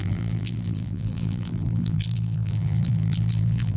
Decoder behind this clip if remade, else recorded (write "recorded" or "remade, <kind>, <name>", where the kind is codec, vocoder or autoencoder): remade, vocoder, BigVGAN v2